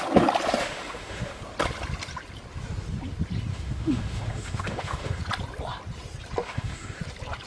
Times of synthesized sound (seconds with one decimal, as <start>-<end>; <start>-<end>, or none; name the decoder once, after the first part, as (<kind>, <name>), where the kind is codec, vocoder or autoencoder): 0.6-1.4 (autoencoder, DAC-VAE); 3.5-5.2; 6.4-7.0